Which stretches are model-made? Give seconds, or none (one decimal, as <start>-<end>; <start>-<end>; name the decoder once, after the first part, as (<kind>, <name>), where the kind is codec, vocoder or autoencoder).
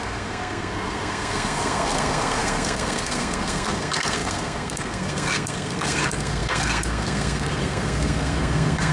0.0-8.9 (codec, SNAC)